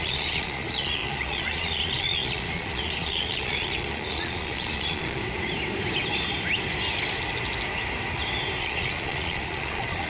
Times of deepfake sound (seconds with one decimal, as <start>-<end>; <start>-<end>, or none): 0.0-5.2; 8.6-10.1